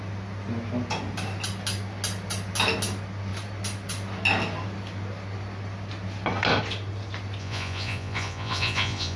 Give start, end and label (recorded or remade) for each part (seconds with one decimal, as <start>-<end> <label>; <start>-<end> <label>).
0.0-7.4 recorded; 7.4-9.2 remade